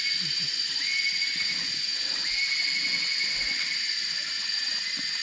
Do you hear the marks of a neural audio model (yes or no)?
no